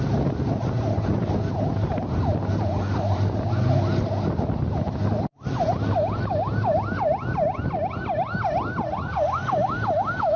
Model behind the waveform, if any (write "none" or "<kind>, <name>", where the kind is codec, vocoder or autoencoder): none